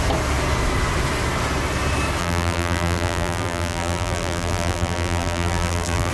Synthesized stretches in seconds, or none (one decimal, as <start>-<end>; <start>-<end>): 2.2-6.1